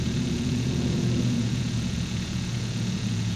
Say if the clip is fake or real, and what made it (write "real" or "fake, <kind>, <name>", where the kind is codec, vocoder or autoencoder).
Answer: fake, vocoder, Vocos